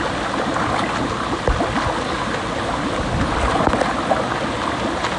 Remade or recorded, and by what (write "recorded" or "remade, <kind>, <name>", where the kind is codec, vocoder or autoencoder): recorded